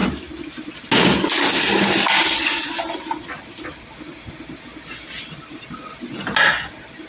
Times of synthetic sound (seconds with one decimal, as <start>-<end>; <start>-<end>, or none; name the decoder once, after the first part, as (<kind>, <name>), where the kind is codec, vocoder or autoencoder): none